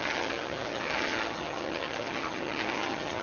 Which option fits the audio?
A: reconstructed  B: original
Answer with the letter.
A